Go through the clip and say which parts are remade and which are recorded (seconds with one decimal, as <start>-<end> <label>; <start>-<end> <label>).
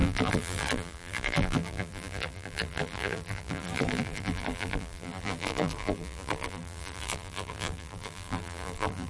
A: 0.0-9.1 remade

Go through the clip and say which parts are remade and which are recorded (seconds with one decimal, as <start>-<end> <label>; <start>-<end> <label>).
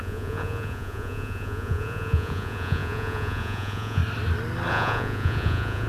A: 0.0-4.0 remade; 4.0-4.7 recorded; 4.7-5.9 remade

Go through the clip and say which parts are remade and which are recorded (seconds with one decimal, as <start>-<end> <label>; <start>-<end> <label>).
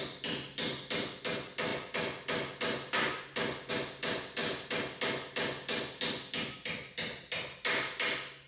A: 0.0-4.4 recorded; 4.4-5.0 remade; 5.0-8.5 recorded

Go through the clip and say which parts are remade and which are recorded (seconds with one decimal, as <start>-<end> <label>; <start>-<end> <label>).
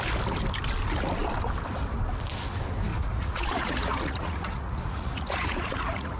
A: 0.0-2.9 recorded; 2.9-6.2 remade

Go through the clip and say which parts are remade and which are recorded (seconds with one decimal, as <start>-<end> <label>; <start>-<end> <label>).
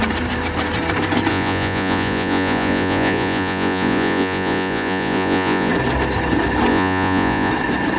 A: 0.0-1.3 recorded; 1.3-5.7 remade; 5.7-6.7 recorded; 6.7-7.5 remade; 7.5-8.0 recorded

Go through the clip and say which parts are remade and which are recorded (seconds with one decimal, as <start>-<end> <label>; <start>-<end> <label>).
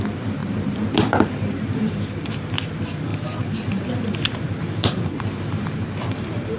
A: 0.0-0.4 recorded; 0.4-2.3 remade; 2.3-3.1 recorded; 3.1-6.6 remade